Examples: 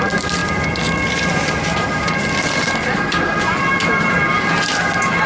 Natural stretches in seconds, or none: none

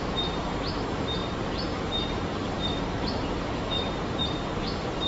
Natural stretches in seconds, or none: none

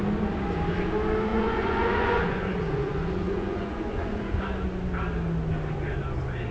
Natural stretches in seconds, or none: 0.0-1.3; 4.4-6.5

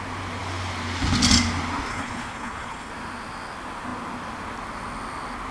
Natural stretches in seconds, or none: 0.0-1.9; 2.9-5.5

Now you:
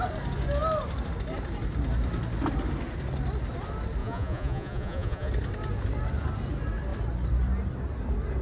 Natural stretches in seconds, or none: 0.0-4.0; 5.3-8.4

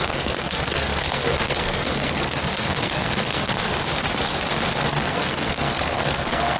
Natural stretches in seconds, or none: 3.7-4.7

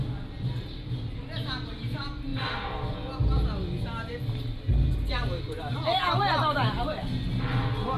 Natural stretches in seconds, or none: 0.0-8.0

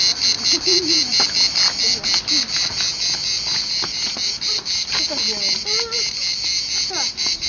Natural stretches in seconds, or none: 0.0-7.5